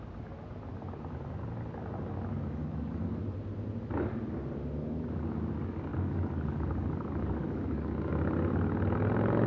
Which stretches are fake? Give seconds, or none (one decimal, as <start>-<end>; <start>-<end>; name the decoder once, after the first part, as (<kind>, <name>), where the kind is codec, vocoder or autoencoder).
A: 2.3-3.2 (codec, DAC); 5.9-8.1